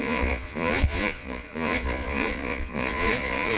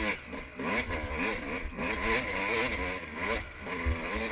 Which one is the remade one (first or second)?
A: first